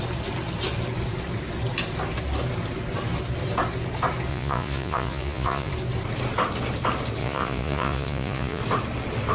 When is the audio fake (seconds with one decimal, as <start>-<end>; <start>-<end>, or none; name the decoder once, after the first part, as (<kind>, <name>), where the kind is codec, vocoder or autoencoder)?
4.3-5.7 (vocoder, Vocos); 7.2-8.6